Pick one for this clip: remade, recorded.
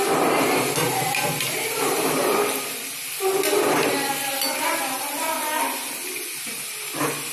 recorded